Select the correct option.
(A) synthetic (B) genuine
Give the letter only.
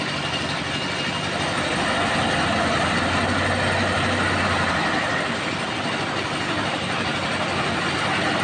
B